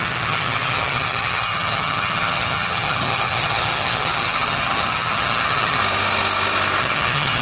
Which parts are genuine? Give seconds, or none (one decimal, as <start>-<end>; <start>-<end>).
5.8-6.8